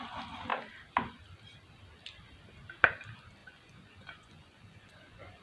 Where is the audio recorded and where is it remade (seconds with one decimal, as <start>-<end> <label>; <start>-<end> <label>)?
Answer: 0.0-3.4 recorded; 3.4-5.4 remade

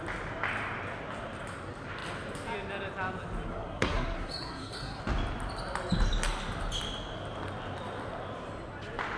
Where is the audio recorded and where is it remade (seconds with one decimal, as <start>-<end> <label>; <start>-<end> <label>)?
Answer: 0.0-3.5 recorded; 3.5-5.0 remade; 5.0-9.2 recorded

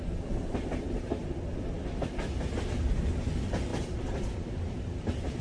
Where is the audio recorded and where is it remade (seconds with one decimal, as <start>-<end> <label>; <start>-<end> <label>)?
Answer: 0.0-3.7 recorded; 3.7-4.6 remade; 4.6-5.4 recorded

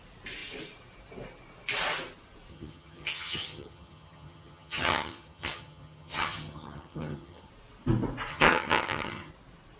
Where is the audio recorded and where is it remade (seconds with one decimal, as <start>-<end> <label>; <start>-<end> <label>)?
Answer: 0.0-2.5 recorded; 2.5-7.5 remade; 7.5-8.3 recorded; 8.3-9.3 remade; 9.3-9.8 recorded

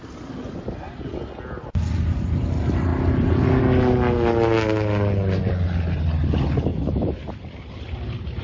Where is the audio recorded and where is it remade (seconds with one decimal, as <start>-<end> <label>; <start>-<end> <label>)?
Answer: 0.0-6.7 recorded; 6.7-7.2 remade; 7.2-8.4 recorded

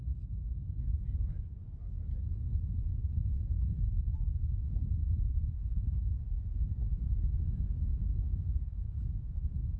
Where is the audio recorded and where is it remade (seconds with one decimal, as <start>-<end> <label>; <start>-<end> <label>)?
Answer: 0.0-4.1 remade; 4.1-5.0 recorded; 5.0-6.0 remade; 6.0-7.0 recorded; 7.0-9.8 remade

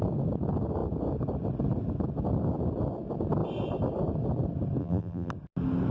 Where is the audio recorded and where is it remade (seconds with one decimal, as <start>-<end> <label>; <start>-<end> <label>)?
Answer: 0.0-4.8 recorded; 4.8-5.3 remade; 5.3-5.9 recorded